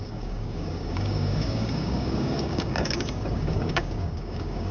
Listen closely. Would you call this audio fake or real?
fake